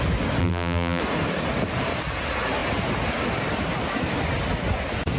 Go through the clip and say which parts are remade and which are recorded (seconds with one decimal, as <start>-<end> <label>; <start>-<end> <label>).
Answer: 0.0-0.4 recorded; 0.4-1.0 remade; 1.0-5.2 recorded